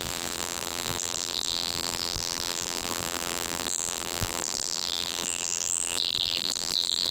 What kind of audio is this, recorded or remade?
remade